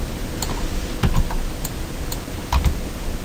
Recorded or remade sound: recorded